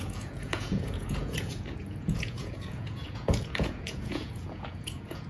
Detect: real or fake fake